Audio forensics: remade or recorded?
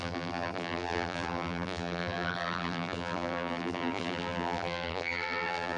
remade